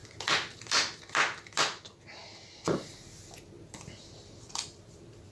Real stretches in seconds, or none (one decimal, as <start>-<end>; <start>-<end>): 0.0-5.3